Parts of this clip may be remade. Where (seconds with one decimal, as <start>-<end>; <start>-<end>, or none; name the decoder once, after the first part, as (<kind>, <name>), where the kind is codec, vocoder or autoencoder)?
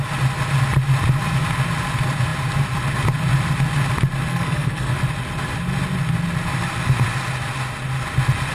4.3-4.9 (codec, SNAC)